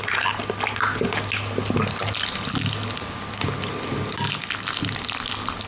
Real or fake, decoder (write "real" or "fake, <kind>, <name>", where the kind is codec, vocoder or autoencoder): real